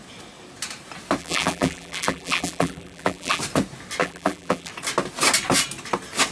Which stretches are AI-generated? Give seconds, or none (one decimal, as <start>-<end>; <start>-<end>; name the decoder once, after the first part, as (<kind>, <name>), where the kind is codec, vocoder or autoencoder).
1.2-3.4 (vocoder, BigVGAN v2); 4.0-4.7